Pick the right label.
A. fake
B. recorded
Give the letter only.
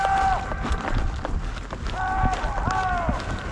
B